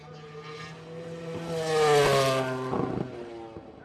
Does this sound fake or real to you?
real